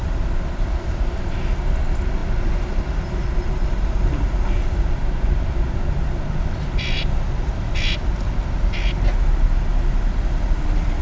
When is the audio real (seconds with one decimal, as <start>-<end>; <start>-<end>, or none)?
0.0-11.0